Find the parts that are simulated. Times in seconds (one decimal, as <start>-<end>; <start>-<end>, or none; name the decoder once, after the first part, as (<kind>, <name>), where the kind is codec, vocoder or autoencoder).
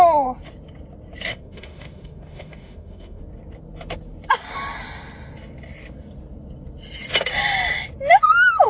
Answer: 1.3-3.2 (autoencoder, DAC-VAE)